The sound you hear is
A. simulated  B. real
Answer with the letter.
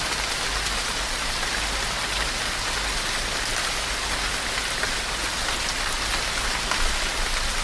B